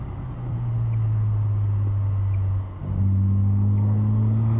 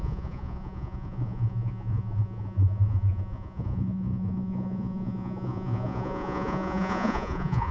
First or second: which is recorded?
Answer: first